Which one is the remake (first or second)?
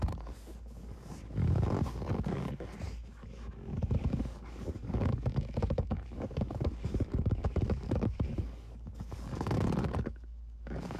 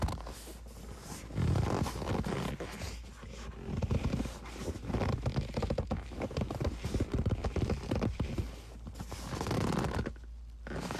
first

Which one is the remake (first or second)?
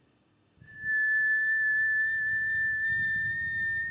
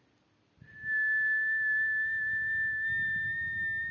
first